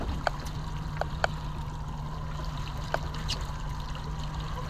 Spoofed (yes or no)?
no